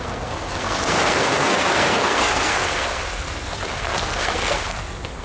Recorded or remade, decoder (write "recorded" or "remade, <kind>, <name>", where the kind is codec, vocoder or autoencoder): remade, codec, SNAC